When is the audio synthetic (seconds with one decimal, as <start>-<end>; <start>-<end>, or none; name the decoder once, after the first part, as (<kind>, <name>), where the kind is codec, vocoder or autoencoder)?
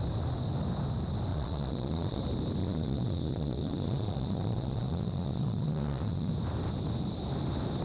1.3-2.2 (vocoder, Vocos); 2.6-6.3